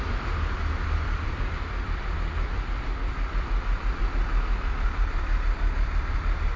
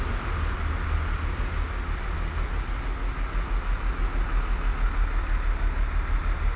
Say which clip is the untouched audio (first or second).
second